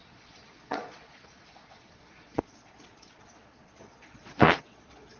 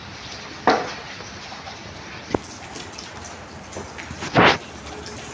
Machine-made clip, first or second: first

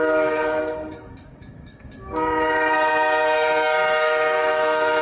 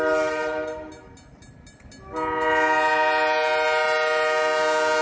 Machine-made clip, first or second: first